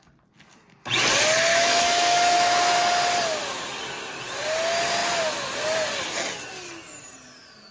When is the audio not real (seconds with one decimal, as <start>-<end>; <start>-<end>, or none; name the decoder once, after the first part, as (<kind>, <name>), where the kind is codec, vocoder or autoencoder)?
1.5-2.8 (autoencoder, DAC-VAE)